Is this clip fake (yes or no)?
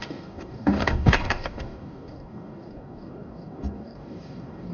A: yes